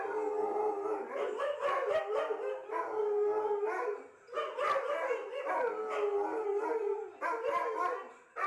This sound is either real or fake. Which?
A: real